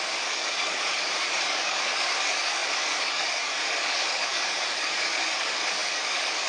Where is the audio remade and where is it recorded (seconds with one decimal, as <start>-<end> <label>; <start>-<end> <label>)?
0.0-6.5 remade